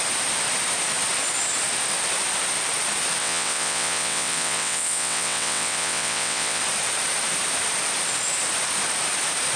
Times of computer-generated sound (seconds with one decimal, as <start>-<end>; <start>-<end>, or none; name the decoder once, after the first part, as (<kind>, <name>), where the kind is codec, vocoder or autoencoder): 3.2-6.6 (vocoder, WaveNeXt)